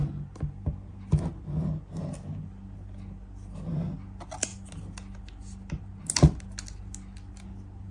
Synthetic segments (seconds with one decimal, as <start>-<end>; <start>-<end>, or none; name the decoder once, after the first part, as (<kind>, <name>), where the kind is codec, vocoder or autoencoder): none